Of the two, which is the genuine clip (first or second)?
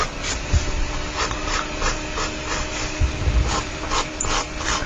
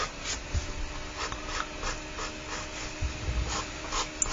second